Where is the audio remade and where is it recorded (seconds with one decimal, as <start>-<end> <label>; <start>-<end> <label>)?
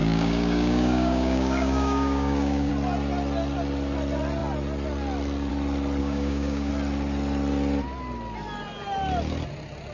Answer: 0.0-2.7 remade; 2.7-6.0 recorded; 6.0-6.7 remade; 6.7-9.9 recorded